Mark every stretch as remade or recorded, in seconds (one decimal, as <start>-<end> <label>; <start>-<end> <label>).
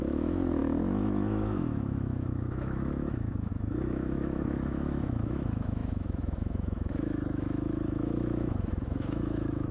0.0-9.7 remade